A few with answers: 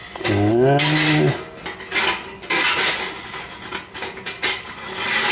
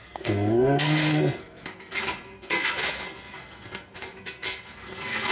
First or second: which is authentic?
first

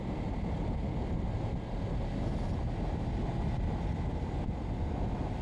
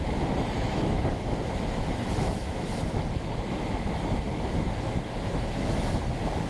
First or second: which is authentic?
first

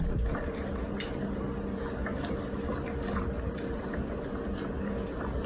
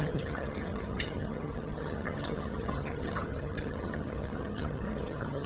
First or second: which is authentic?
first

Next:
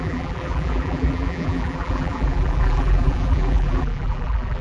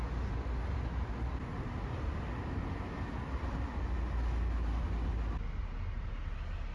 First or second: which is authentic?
second